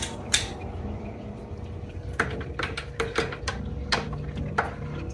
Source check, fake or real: real